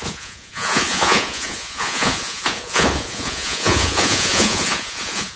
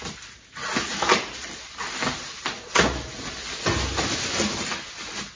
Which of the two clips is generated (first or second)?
first